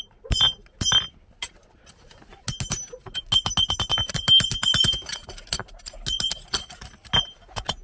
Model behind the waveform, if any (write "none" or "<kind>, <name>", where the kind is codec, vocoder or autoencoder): none